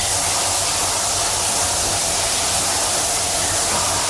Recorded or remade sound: recorded